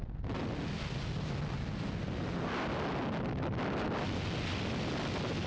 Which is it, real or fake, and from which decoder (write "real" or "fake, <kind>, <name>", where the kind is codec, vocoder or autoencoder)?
real